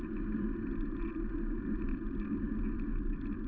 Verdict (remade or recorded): recorded